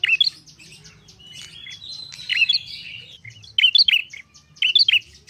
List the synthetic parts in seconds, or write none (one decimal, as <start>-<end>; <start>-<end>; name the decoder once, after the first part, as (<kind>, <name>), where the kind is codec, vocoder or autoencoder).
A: 2.3-3.0 (vocoder, BigVGAN v2)